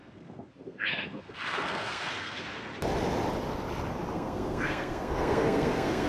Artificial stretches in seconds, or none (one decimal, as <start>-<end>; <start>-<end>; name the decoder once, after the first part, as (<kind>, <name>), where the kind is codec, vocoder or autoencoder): 0.0-2.7 (codec, SNAC); 4.1-6.1